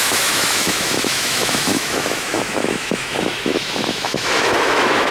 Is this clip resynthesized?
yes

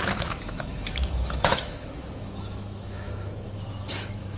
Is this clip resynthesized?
yes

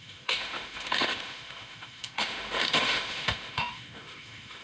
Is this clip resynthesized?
yes